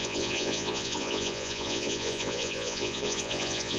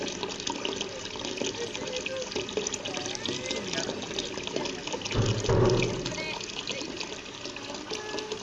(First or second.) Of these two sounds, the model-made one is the first